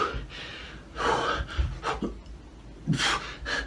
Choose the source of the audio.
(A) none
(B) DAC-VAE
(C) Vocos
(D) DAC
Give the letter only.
A